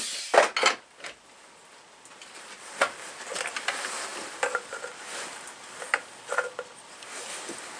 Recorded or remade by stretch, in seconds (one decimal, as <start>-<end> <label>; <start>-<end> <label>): 0.0-7.8 recorded